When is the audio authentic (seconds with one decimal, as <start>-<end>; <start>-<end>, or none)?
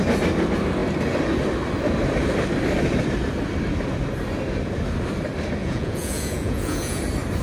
0.0-5.6; 7.0-7.4